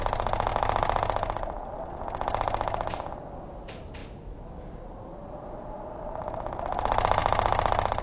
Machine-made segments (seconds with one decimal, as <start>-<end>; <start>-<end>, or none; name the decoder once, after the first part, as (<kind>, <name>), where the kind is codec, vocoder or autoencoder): 0.5-1.9 (vocoder, BigVGAN v2); 4.0-4.6